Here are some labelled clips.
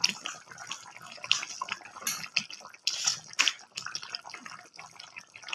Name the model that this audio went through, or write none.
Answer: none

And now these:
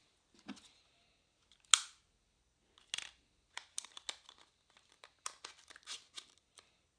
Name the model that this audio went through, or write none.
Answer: none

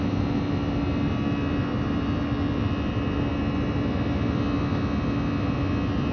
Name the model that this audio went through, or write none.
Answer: none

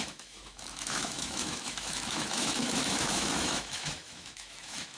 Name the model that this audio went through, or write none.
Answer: autoencoder, DAC-VAE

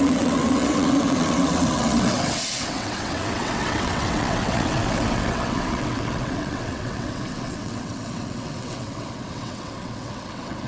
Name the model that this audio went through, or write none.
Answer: vocoder, WaveNeXt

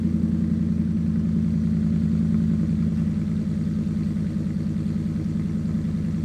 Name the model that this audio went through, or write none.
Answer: none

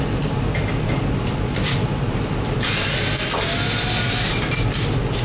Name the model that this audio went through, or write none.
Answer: none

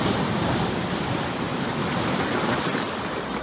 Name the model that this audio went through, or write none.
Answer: vocoder, BigVGAN v2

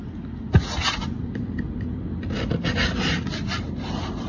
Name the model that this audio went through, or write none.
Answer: none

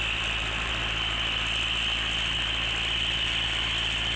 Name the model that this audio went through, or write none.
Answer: none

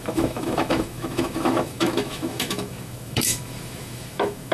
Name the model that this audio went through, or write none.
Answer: autoencoder, DAC-VAE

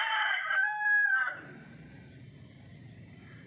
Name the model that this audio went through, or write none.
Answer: vocoder, BigVGAN v2